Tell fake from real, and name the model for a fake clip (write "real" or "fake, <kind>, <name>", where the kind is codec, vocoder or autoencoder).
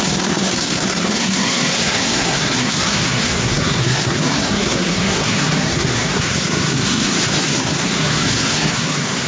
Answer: fake, codec, SNAC